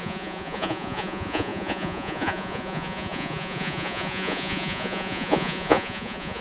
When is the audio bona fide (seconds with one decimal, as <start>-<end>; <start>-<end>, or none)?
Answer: none